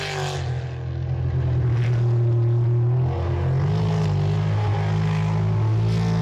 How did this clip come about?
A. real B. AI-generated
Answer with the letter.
A